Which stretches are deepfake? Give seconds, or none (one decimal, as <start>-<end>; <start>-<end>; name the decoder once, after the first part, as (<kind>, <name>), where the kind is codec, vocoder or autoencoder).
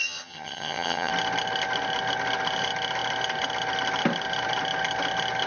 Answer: 0.0-1.1 (vocoder, HiFi-GAN)